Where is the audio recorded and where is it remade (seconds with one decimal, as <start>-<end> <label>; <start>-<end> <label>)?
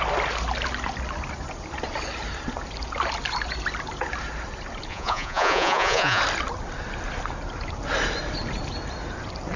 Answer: 0.0-4.9 recorded; 4.9-6.2 remade; 6.2-9.6 recorded